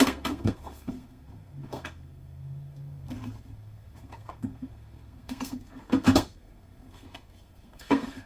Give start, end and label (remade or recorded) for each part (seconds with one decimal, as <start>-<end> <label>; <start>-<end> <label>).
0.0-8.3 remade